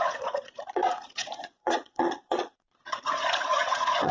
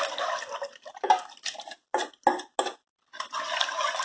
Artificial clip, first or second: first